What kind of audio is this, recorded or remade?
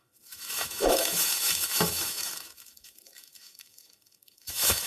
remade